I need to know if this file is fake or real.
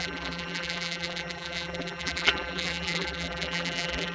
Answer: fake